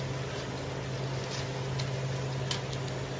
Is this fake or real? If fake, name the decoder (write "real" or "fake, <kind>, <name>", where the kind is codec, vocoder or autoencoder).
real